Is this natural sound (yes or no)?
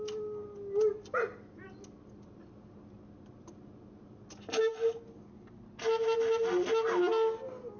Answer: yes